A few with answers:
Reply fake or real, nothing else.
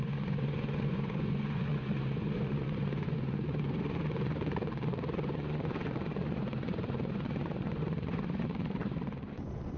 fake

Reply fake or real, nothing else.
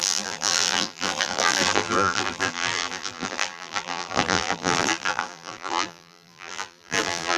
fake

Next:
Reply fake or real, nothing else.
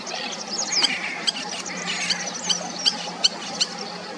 real